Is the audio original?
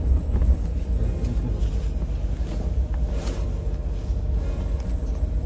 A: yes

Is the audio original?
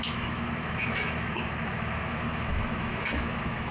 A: no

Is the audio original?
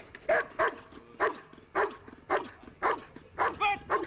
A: yes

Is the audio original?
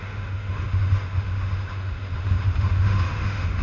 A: no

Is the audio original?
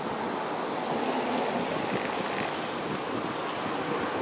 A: yes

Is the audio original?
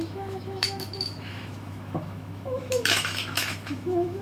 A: no